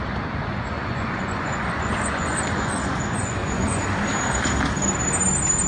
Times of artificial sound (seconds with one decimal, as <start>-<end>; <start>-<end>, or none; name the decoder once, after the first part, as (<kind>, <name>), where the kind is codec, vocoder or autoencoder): 0.4-3.8 (vocoder, Vocos)